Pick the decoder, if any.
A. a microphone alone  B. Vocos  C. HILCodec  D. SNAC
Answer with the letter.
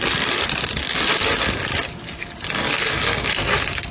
A